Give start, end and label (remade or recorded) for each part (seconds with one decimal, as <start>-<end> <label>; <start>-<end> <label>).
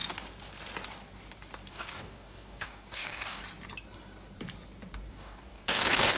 0.0-1.7 recorded; 1.7-3.4 remade; 3.4-5.1 recorded; 5.1-6.2 remade